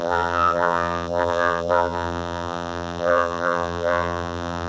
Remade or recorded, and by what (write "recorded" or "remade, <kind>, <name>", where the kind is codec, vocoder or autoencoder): remade, vocoder, BigVGAN v2